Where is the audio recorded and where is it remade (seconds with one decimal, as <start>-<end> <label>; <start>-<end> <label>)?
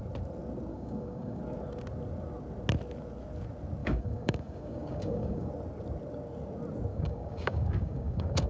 0.0-0.7 recorded; 0.7-1.4 remade; 1.4-3.8 recorded; 3.8-5.5 remade; 5.5-6.9 recorded; 6.9-8.5 remade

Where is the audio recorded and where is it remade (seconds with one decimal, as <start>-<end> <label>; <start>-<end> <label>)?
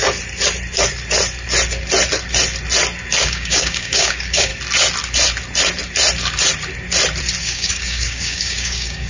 0.0-3.2 recorded; 3.2-4.5 remade; 4.5-7.4 recorded; 7.4-9.1 remade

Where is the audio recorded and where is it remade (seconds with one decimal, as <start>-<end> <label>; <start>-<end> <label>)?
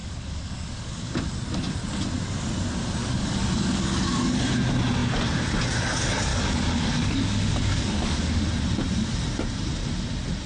0.0-1.2 remade; 1.2-3.0 recorded; 3.0-4.5 remade; 4.5-6.3 recorded; 6.3-8.4 remade; 8.4-10.5 recorded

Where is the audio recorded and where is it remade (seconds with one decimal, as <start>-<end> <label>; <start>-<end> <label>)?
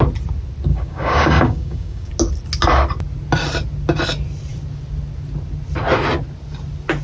0.0-0.7 recorded; 0.7-2.1 remade; 2.1-7.0 recorded